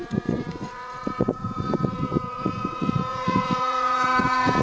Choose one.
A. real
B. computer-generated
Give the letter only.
B